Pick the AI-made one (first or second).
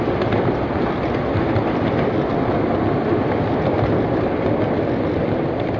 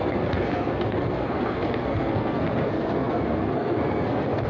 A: second